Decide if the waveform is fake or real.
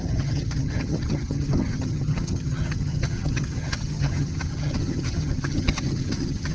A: fake